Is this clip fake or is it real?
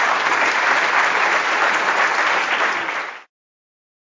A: fake